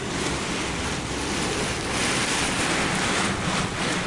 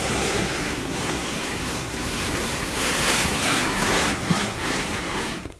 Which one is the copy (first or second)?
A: second